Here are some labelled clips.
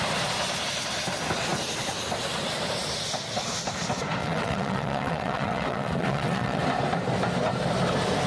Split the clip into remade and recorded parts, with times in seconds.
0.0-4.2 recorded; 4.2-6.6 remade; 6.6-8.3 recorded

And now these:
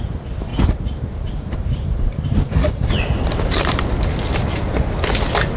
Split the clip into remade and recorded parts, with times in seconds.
0.0-0.5 recorded; 0.5-3.9 remade; 3.9-5.6 recorded

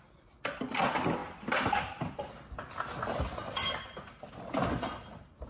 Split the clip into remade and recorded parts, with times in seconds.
0.0-5.5 recorded

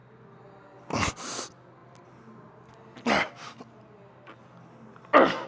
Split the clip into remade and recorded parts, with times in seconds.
0.0-5.5 recorded

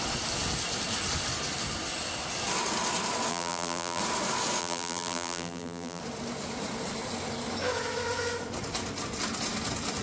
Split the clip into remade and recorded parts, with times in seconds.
0.0-3.3 recorded; 3.3-4.0 remade; 4.0-4.6 recorded; 4.6-6.0 remade; 6.0-10.0 recorded

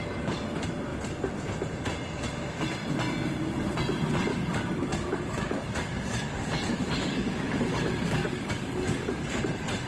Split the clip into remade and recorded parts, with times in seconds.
0.0-4.3 recorded; 4.3-9.4 remade; 9.4-9.9 recorded